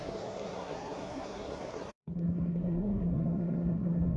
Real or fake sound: fake